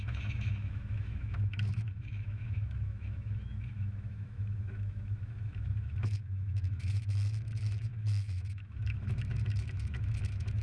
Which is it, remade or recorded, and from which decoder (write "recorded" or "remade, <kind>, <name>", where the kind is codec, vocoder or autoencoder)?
remade, autoencoder, DAC-VAE